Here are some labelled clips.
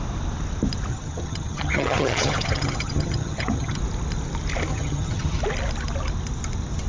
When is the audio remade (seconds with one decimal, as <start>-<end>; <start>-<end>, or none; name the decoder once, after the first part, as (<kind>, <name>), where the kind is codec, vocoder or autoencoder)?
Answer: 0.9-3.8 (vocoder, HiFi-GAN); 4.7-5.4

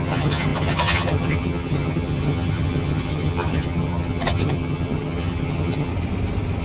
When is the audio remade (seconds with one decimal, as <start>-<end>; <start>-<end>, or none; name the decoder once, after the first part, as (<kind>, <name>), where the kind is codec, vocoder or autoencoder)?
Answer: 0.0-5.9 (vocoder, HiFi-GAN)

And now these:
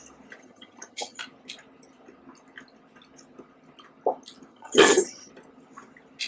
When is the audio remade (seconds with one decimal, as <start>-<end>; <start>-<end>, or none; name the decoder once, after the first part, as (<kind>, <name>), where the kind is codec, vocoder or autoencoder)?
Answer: 0.4-1.2 (vocoder, HiFi-GAN); 4.5-5.3

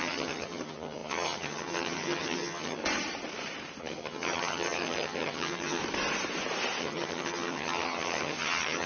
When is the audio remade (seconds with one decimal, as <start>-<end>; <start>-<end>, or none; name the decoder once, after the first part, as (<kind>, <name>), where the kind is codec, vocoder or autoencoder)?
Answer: 0.0-2.8 (vocoder, HiFi-GAN); 3.8-5.8; 6.8-8.9

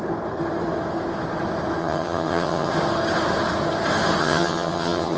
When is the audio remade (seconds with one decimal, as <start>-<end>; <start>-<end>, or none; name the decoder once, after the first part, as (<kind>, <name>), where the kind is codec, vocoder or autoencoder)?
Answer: 1.8-2.7 (vocoder, HiFi-GAN); 4.2-5.2

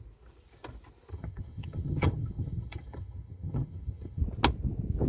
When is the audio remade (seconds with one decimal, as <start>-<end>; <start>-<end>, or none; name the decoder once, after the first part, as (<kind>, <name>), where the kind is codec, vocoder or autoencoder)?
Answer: 1.1-4.2 (vocoder, HiFi-GAN)

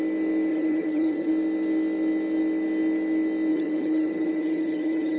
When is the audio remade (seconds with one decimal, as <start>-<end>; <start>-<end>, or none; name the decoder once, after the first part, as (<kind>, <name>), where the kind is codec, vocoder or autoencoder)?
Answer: 0.5-1.3 (vocoder, HiFi-GAN); 3.5-5.2